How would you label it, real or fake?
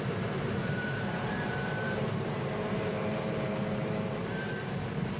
fake